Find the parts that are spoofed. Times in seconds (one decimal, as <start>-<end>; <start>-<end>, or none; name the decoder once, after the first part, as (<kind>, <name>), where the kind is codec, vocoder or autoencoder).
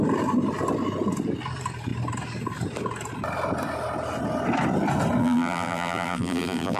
5.2-6.8 (vocoder, BigVGAN v2)